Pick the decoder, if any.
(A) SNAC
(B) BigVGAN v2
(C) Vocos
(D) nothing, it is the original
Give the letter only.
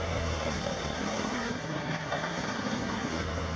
A